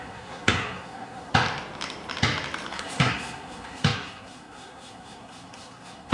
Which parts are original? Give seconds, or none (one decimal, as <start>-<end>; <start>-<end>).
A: 1.3-2.7